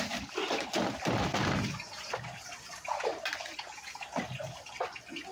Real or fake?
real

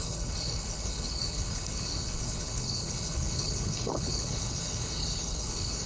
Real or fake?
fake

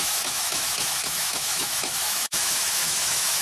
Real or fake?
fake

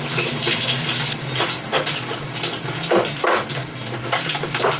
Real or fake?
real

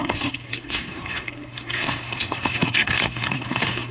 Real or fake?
fake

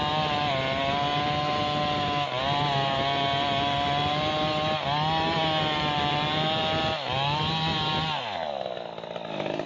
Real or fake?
real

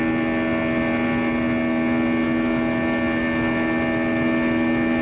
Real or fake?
real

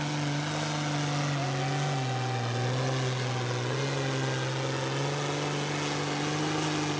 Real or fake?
real